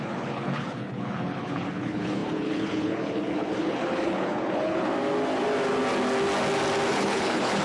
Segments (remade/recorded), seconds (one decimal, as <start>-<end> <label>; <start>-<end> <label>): 0.0-4.9 remade; 4.9-6.9 recorded; 6.9-7.6 remade